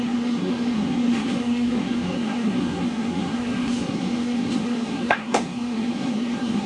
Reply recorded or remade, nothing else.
remade